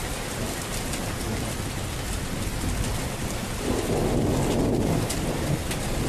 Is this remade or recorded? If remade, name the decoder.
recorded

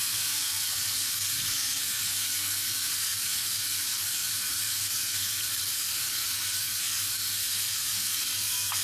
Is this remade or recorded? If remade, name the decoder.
remade, codec, SNAC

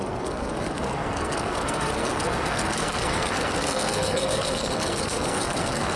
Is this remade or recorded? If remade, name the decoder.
remade, codec, SNAC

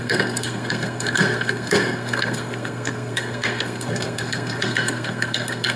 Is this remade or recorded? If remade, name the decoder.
remade, codec, SNAC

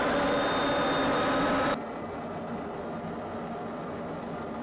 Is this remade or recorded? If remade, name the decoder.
recorded